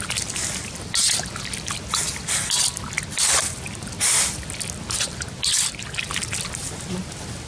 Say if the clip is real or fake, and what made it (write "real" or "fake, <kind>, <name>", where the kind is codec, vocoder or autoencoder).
real